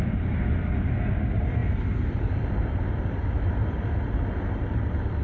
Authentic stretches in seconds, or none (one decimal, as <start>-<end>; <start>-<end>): 0.0-5.2